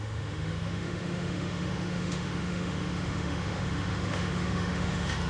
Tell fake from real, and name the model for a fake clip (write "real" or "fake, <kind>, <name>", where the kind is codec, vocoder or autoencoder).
fake, autoencoder, DAC-VAE